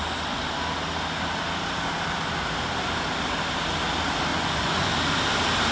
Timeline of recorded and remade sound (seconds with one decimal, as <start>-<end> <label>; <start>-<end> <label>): 0.0-4.3 recorded; 4.3-4.9 remade; 4.9-5.7 recorded